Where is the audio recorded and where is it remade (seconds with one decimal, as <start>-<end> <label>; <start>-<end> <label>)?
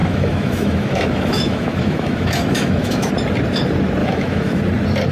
0.0-3.1 remade; 3.1-4.0 recorded; 4.0-4.6 remade; 4.6-5.1 recorded